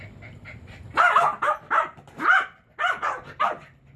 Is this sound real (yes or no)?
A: yes